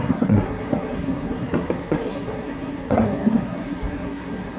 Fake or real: fake